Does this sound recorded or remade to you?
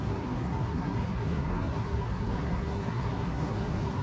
remade